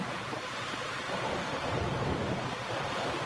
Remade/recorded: remade